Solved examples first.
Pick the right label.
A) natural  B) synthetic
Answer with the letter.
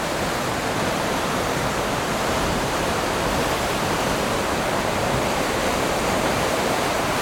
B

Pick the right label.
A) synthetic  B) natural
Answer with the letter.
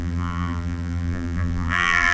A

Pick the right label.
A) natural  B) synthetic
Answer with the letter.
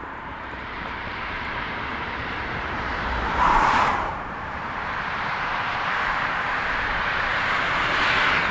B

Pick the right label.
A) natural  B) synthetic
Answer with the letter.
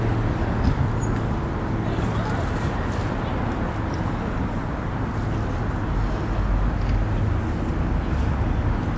A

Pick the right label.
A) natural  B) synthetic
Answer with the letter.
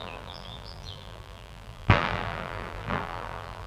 B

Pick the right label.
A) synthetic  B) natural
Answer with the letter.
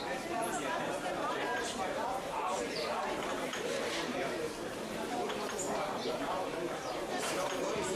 A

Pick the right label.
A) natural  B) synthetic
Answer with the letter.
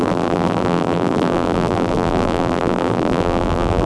B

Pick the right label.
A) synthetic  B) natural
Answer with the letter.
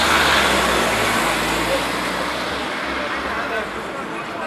B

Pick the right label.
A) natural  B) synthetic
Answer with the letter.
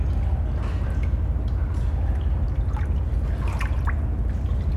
A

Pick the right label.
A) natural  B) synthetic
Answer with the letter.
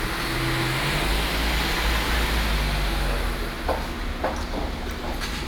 A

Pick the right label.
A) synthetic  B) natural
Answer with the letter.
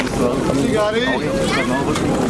B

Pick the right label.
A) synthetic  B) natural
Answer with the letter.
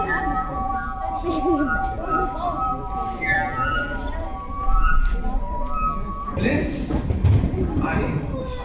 A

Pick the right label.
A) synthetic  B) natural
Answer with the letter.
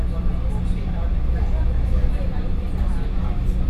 B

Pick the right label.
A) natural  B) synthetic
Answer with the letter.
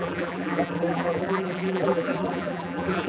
B